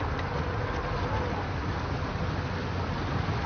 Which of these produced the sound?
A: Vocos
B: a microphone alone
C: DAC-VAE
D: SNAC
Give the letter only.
B